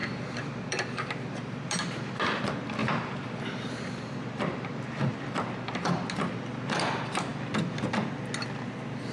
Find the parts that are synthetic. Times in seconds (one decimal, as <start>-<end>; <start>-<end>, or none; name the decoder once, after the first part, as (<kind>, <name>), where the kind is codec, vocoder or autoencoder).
0.0-2.4 (vocoder, BigVGAN v2); 2.8-5.2